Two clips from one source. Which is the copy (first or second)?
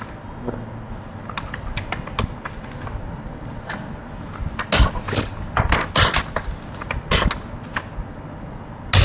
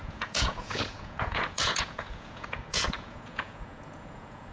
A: second